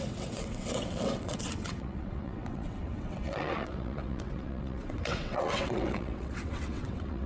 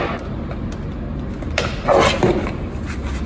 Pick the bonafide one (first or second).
second